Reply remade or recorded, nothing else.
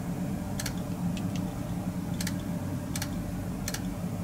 recorded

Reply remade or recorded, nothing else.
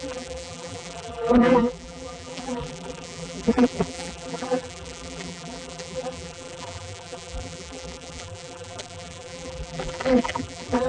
remade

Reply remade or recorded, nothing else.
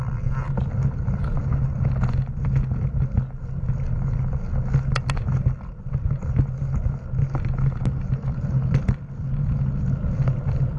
recorded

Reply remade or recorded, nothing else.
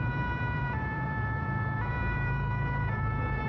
remade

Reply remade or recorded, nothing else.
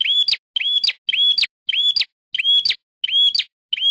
recorded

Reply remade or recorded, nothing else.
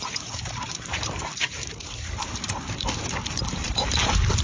remade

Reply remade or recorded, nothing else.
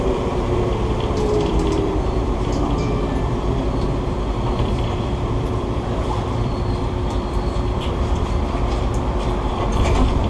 remade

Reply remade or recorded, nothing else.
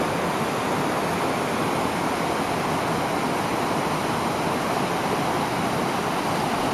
recorded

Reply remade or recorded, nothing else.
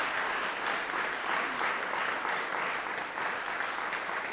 recorded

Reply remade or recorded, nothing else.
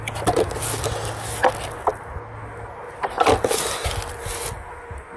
recorded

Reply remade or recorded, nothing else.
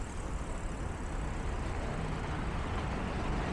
remade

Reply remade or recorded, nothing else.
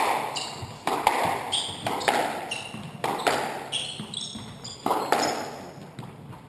recorded